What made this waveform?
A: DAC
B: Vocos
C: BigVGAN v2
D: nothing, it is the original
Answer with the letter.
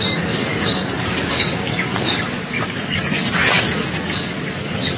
A